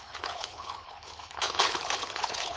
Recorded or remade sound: remade